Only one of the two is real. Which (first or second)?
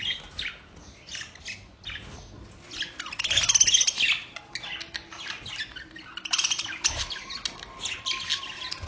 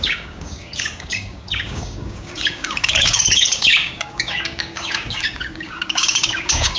first